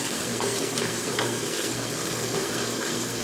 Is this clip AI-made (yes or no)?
yes